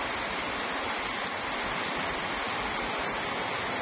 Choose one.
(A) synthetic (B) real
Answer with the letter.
B